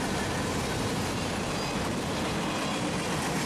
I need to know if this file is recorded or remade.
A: recorded